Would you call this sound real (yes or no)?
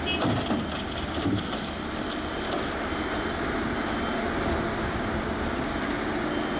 yes